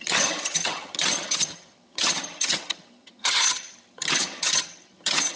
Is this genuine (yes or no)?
no